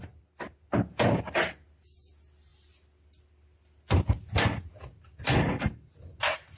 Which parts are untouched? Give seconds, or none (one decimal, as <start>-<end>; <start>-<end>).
0.0-6.6